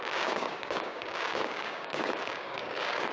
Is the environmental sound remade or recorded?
remade